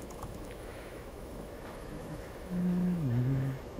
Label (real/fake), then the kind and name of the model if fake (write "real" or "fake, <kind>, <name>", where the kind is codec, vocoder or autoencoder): fake, autoencoder, DAC-VAE